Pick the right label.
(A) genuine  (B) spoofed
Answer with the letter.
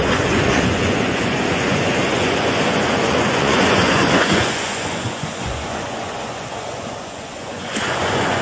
B